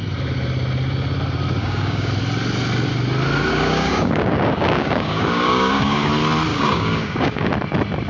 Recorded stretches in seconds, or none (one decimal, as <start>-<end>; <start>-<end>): 0.0-1.6; 2.1-3.5; 6.1-6.5; 7.5-8.1